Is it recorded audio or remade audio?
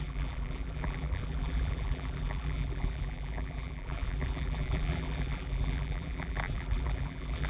remade